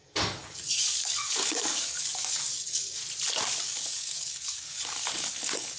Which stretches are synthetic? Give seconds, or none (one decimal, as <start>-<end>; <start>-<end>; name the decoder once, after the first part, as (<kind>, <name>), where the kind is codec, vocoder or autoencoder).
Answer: 0.0-3.0 (codec, DAC); 3.6-5.8